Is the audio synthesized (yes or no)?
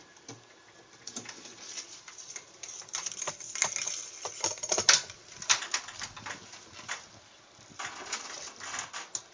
no